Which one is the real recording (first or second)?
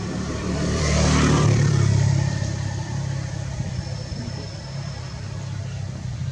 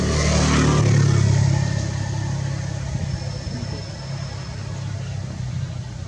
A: second